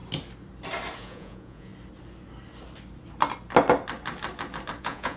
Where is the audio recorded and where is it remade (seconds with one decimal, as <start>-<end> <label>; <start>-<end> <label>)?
0.0-1.0 recorded; 1.0-1.7 remade; 1.7-4.8 recorded; 4.8-5.2 remade